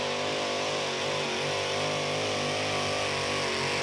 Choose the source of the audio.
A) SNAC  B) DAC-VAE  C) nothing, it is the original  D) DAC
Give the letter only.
C